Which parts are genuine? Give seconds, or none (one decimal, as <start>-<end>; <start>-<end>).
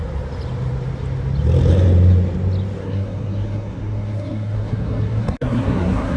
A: 0.0-2.8